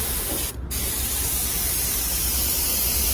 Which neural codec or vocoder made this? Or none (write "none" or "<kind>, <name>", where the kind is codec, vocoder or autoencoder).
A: none